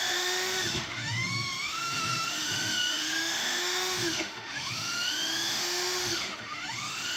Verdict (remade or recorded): remade